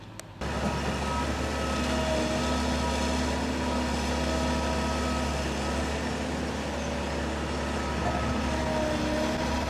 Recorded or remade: recorded